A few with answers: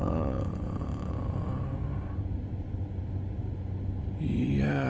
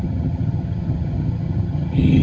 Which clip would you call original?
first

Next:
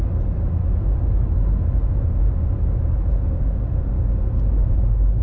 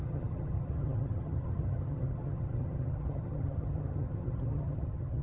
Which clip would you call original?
first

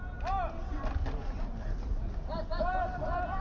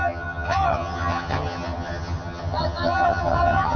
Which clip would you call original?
first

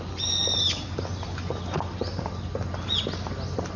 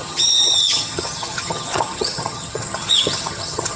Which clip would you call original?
first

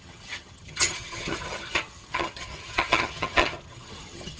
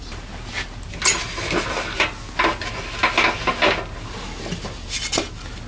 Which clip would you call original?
second